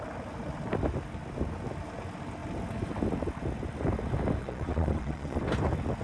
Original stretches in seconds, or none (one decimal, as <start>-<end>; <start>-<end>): 0.0-4.4; 5.4-6.0